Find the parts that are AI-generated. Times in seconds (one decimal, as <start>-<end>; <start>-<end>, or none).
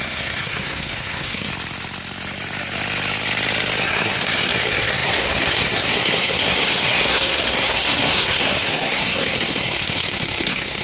0.0-1.5; 3.8-10.8